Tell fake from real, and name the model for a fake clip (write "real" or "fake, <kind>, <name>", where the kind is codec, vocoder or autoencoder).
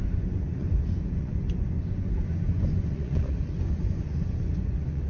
fake, vocoder, Vocos